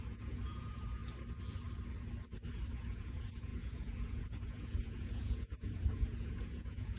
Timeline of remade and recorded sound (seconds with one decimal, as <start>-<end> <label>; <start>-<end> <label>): 0.0-1.0 remade; 1.0-2.7 recorded; 2.7-7.0 remade